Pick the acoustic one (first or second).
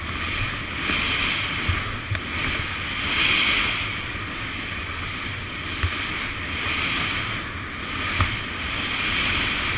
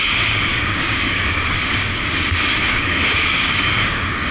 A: first